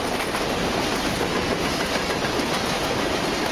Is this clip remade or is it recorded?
recorded